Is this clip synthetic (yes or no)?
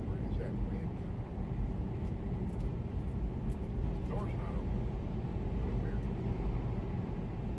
no